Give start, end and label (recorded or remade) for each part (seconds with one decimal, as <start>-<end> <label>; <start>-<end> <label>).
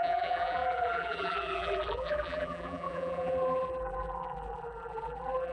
0.0-5.5 remade